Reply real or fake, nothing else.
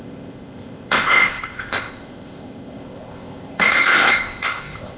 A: fake